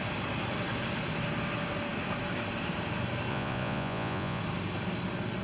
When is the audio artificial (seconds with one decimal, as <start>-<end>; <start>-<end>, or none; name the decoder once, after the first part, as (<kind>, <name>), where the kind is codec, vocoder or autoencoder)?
3.3-4.4 (vocoder, Vocos)